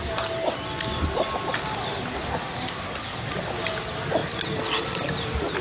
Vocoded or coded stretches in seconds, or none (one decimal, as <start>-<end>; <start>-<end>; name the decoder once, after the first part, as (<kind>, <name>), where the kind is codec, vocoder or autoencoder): none